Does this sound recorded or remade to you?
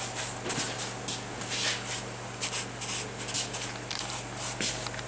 recorded